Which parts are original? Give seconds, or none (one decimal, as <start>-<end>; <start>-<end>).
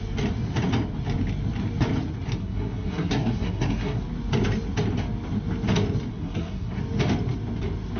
0.0-2.4; 4.0-6.1; 6.8-8.0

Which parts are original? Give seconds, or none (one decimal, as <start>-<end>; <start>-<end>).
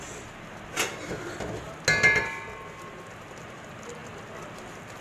0.0-5.0